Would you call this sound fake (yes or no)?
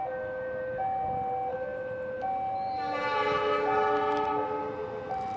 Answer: no